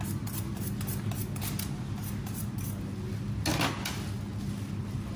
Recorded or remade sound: recorded